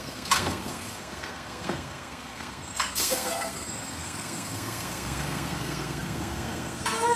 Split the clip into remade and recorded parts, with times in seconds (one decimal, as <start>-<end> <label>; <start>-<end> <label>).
0.0-7.2 remade